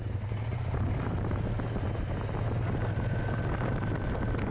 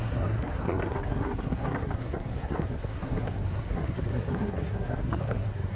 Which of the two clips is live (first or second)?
first